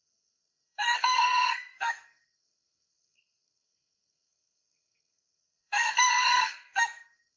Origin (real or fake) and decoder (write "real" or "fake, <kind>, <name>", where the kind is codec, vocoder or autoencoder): fake, codec, SNAC